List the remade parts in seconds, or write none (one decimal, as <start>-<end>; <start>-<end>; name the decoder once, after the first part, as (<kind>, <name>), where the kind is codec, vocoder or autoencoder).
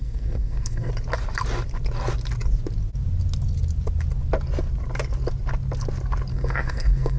0.0-0.9 (codec, SNAC); 6.3-7.2